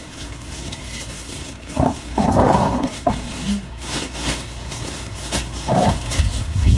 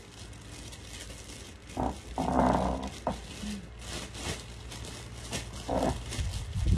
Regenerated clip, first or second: first